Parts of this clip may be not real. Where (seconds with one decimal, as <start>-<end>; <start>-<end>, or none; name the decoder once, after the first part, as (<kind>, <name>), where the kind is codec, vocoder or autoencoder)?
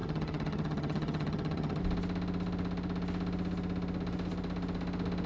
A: 0.0-1.8 (vocoder, HiFi-GAN)